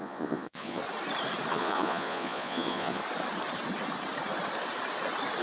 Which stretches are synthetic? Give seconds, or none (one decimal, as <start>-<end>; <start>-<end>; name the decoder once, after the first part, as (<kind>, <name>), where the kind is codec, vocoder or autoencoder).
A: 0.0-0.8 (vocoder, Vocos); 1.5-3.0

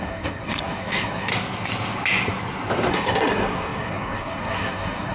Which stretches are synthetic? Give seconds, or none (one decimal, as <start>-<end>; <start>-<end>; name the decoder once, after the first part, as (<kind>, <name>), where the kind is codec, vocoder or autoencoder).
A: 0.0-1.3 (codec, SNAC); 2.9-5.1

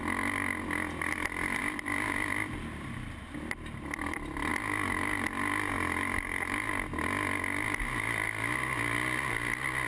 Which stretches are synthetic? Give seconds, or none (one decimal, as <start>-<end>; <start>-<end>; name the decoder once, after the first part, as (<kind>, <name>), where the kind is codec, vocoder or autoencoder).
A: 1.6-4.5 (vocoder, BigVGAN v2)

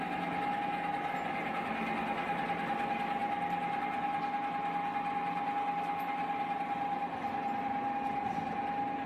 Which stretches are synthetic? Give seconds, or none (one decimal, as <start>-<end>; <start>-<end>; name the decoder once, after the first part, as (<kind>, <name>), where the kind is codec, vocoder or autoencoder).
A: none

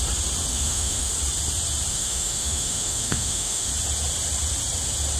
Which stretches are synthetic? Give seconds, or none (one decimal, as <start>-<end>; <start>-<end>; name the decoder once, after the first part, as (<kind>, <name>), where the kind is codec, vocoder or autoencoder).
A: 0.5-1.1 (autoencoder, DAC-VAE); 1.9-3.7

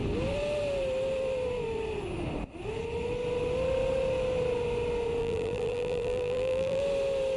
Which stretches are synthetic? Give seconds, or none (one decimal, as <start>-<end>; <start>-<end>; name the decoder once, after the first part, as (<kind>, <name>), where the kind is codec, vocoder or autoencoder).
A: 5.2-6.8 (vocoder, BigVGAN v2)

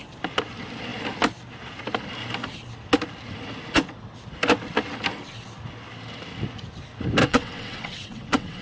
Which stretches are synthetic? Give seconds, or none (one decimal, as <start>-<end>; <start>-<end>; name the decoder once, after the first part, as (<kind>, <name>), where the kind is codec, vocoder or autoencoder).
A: 7.2-8.6 (vocoder, WaveNeXt)

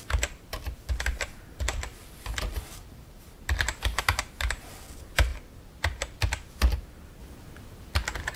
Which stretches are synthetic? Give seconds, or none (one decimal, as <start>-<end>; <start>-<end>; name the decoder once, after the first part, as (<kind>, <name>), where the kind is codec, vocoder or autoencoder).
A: 0.0-5.3 (vocoder, BigVGAN v2); 6.5-7.2